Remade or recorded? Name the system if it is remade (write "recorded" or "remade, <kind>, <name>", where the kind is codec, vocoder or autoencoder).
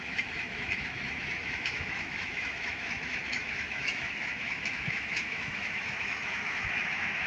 remade, autoencoder, DAC-VAE